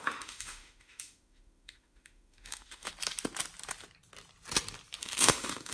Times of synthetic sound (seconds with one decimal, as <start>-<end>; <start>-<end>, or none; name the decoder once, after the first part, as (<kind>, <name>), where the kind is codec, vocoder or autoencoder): 0.0-2.9 (autoencoder, DAC-VAE); 5.0-5.7